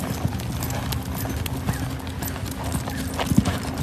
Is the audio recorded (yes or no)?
yes